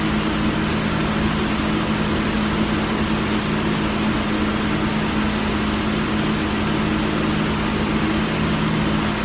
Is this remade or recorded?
recorded